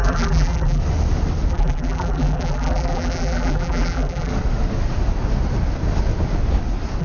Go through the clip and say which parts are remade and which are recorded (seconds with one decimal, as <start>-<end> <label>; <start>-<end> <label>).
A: 0.0-0.8 remade; 0.8-1.5 recorded; 1.5-4.3 remade; 4.3-7.0 recorded